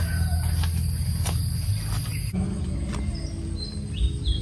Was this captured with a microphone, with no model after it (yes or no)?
yes